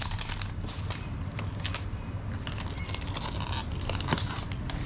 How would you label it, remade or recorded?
remade